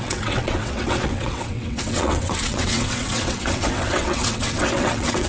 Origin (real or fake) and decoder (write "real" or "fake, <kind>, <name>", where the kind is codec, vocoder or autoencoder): fake, vocoder, WaveNeXt